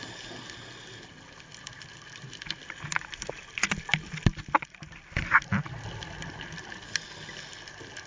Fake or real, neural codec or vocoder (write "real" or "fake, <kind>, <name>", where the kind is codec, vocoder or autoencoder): real